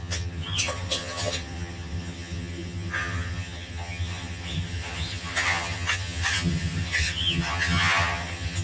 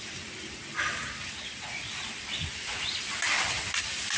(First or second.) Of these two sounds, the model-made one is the first